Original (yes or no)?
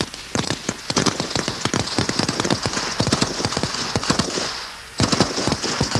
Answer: no